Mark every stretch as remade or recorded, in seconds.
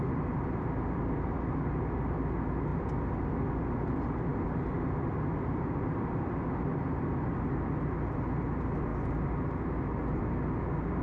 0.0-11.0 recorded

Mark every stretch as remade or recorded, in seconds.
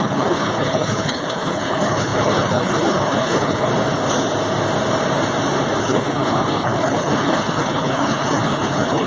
0.0-3.7 remade; 3.7-5.8 recorded; 5.8-9.1 remade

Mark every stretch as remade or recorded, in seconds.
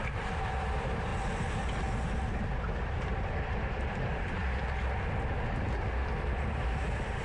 0.0-1.1 remade; 1.1-2.4 recorded; 2.4-4.4 remade; 4.4-6.4 recorded; 6.4-7.2 remade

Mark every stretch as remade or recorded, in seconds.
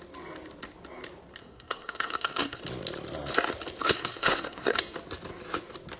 0.0-1.4 recorded; 1.4-2.6 remade; 2.6-3.8 recorded; 3.8-4.8 remade; 4.8-6.0 recorded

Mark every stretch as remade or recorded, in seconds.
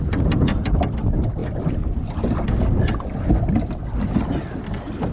0.0-5.1 recorded